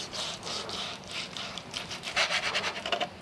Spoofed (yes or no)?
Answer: yes